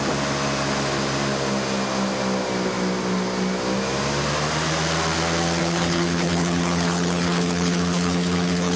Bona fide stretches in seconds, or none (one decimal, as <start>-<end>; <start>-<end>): 0.0-5.6